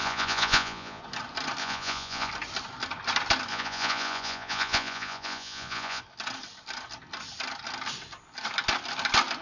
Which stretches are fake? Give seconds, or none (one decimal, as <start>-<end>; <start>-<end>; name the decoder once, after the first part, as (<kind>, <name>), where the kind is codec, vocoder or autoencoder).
0.0-1.0 (vocoder, Vocos); 1.6-2.3; 3.5-6.0